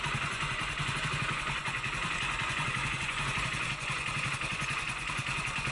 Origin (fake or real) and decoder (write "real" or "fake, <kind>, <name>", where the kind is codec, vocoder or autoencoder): fake, vocoder, Vocos